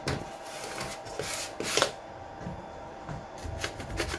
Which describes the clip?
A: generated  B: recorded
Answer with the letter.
B